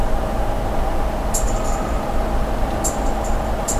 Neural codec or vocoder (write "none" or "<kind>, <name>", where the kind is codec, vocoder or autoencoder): none